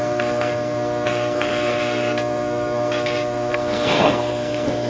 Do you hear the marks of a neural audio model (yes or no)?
yes